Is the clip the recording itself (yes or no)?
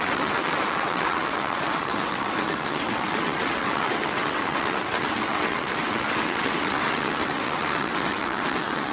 no